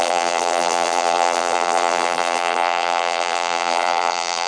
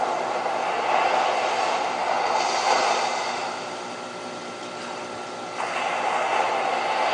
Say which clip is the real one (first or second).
second